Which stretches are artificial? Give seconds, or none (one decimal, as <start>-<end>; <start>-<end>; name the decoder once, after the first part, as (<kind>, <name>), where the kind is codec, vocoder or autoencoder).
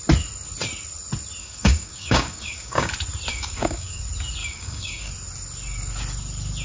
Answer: 1.4-2.9 (codec, DAC); 3.3-4.0; 4.4-5.1